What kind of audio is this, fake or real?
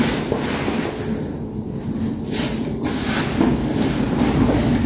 real